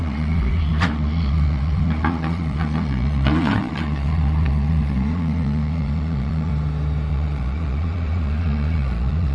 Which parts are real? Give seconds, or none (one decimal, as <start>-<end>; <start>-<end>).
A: 6.5-7.1